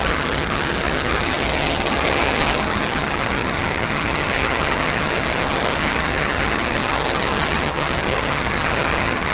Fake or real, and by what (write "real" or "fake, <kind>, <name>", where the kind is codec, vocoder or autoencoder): fake, vocoder, HiFi-GAN